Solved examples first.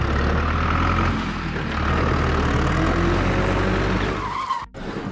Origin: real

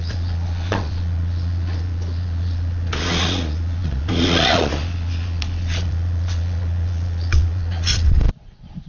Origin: fake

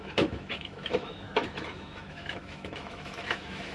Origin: fake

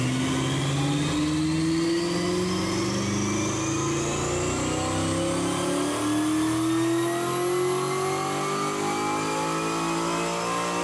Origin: real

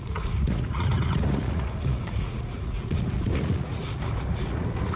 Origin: fake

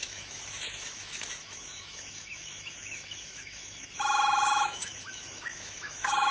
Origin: fake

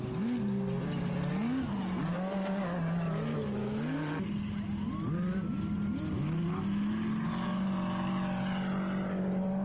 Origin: real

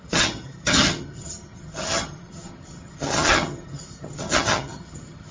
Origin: fake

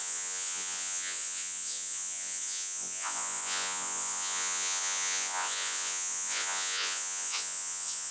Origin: fake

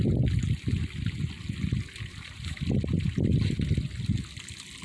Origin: real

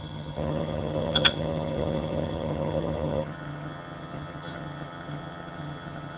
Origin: fake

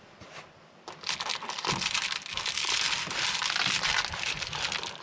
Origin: real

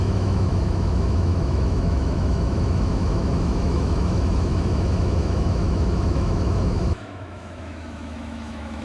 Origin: fake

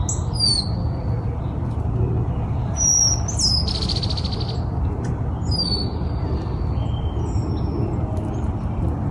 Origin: real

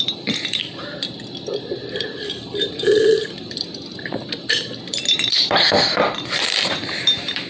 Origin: fake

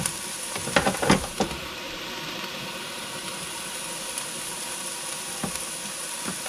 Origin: fake